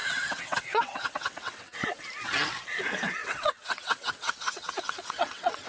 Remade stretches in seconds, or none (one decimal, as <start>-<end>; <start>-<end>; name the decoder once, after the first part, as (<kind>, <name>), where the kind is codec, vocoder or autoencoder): 0.0-2.0 (vocoder, WaveNeXt); 3.2-5.7